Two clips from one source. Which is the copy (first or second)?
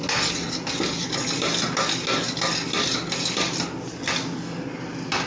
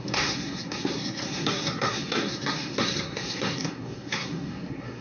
second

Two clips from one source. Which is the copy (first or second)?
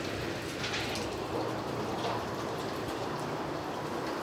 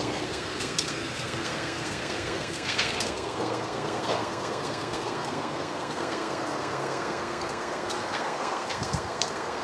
second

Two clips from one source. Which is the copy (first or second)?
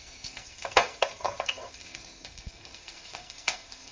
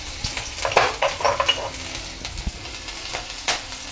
first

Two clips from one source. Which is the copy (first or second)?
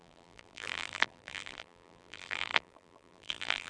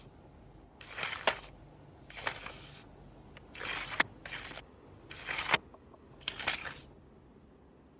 first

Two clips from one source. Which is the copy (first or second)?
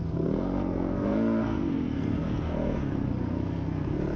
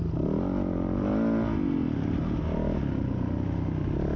first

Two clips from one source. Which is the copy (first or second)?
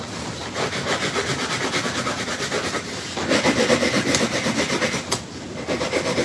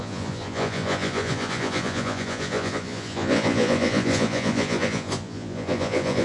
second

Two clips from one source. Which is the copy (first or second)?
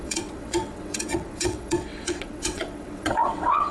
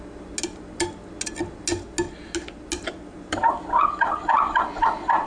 first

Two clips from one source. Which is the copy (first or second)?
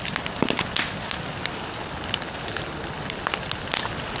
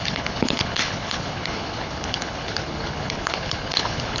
second